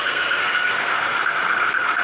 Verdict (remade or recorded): remade